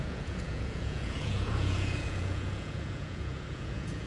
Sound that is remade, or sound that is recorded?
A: remade